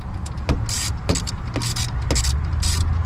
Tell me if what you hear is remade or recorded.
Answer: recorded